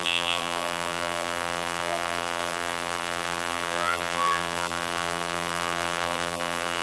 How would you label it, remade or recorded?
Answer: remade